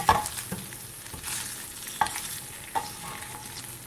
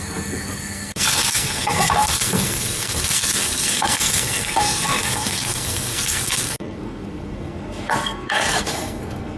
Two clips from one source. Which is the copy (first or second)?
second